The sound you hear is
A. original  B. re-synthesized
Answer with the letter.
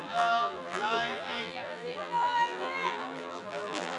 B